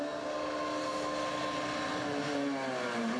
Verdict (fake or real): real